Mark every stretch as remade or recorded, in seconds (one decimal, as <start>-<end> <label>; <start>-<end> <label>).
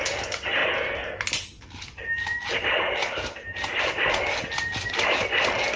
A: 0.0-5.8 recorded